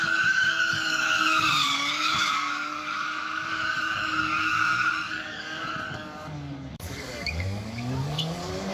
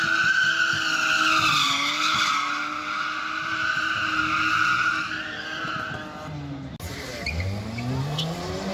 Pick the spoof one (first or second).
first